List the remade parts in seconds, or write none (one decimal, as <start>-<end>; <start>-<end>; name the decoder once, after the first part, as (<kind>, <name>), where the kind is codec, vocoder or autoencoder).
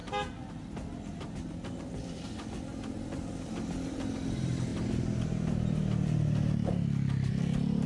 none